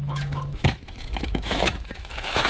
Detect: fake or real fake